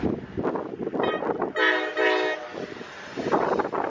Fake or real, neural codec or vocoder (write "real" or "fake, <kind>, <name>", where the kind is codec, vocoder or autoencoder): real